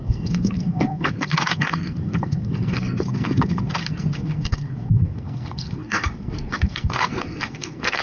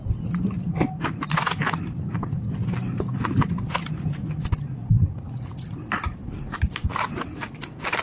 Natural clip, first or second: second